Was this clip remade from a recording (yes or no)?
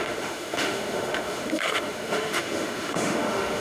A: yes